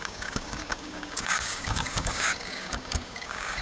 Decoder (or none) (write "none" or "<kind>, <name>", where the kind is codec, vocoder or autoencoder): codec, DAC